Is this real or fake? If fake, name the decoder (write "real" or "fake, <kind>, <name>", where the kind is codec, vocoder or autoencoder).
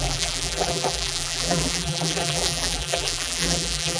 fake, vocoder, BigVGAN v2